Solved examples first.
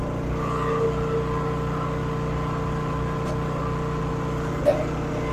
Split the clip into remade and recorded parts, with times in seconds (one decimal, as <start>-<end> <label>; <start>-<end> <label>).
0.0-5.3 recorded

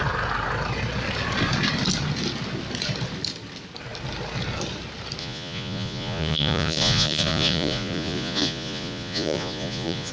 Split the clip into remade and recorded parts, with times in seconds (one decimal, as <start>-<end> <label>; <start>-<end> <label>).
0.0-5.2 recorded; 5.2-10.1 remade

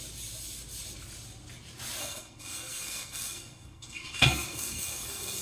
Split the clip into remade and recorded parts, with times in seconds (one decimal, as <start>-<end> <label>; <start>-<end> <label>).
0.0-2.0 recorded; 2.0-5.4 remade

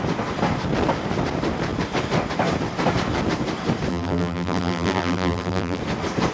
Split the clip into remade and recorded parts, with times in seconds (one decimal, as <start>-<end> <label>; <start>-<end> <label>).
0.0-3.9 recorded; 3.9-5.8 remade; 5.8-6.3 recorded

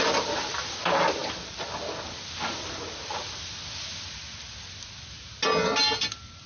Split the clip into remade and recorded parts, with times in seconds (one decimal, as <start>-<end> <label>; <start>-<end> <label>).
0.0-6.5 recorded

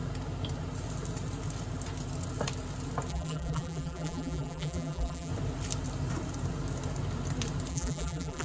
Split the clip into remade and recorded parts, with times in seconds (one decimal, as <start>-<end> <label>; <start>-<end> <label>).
0.0-3.1 recorded; 3.1-5.3 remade; 5.3-7.7 recorded; 7.7-8.4 remade

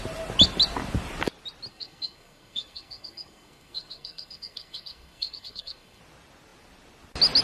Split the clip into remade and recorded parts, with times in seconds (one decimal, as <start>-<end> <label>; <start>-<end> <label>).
0.0-1.7 recorded; 1.7-6.0 remade; 6.0-7.4 recorded

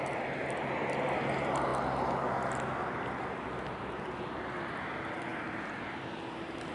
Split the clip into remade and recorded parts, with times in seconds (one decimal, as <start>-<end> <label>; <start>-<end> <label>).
0.0-6.7 recorded